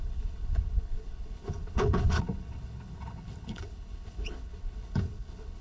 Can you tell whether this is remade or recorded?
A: remade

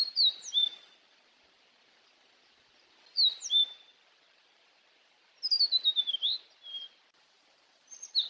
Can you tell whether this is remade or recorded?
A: recorded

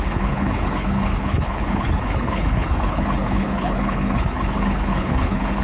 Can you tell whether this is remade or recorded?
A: remade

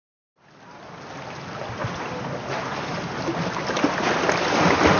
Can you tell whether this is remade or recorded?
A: recorded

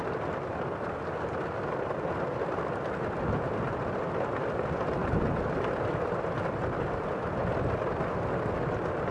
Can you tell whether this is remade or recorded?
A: recorded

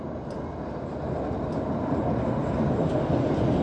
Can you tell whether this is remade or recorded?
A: recorded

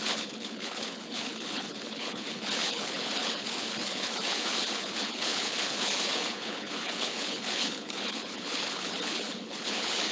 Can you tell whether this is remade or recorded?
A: remade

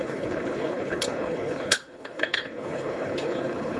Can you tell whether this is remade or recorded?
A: remade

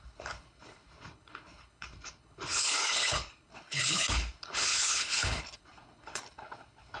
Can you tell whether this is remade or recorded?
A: remade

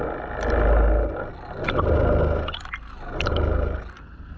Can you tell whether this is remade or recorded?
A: recorded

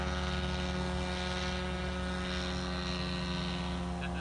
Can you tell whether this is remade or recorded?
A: recorded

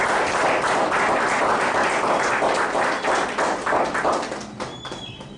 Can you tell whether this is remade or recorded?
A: recorded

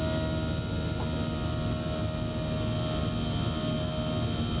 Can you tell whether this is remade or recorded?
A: recorded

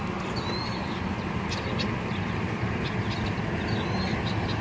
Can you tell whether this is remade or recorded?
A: recorded